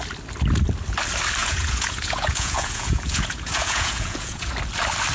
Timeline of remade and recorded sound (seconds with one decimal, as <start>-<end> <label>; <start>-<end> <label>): 0.0-1.4 recorded; 1.4-4.5 remade; 4.5-5.1 recorded